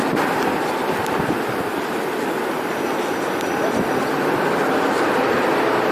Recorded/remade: remade